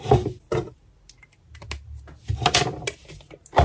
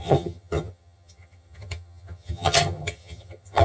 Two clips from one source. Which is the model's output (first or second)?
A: second